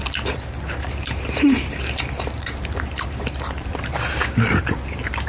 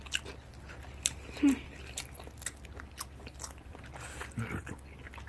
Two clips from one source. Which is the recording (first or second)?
second